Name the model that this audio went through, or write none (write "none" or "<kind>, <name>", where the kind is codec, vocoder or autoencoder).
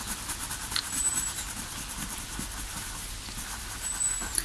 vocoder, BigVGAN v2